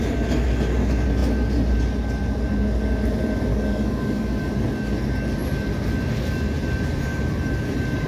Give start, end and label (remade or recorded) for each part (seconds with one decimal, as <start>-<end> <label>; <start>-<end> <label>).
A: 0.0-3.5 recorded; 3.5-4.5 remade; 4.5-8.1 recorded